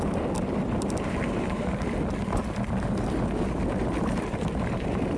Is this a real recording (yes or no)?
yes